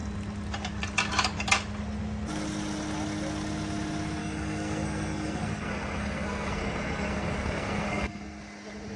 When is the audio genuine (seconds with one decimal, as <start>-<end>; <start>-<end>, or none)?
0.0-4.2; 8.4-9.0